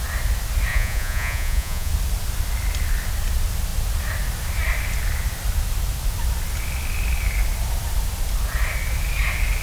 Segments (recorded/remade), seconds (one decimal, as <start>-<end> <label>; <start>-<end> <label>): 0.0-0.7 recorded; 0.7-1.9 remade; 1.9-9.6 recorded